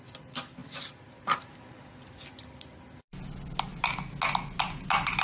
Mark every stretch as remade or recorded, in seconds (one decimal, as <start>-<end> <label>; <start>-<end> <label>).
0.0-5.2 recorded